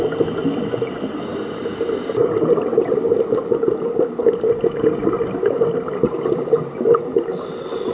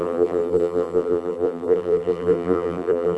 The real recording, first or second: first